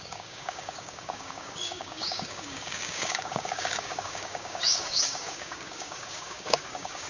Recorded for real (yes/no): no